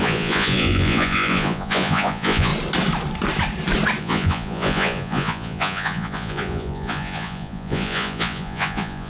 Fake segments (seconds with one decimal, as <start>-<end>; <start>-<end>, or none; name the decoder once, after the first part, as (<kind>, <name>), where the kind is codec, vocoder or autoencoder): 0.0-2.5 (vocoder, Vocos); 4.0-9.1